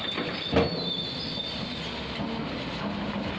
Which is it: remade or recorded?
recorded